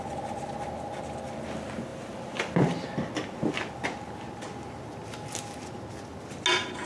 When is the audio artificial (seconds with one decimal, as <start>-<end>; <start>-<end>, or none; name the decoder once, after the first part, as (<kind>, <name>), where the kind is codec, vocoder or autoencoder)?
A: none